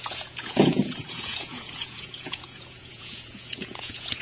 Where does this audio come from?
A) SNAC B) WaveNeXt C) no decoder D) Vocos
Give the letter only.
D